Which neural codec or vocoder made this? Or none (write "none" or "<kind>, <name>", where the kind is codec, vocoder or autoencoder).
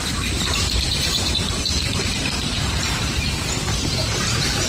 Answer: vocoder, BigVGAN v2